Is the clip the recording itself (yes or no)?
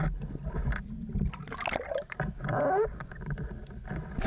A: yes